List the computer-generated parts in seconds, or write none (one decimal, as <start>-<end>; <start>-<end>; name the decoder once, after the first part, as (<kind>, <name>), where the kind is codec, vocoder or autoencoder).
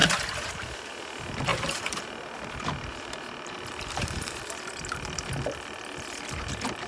0.0-1.0 (vocoder, BigVGAN v2); 1.5-2.0; 2.9-4.4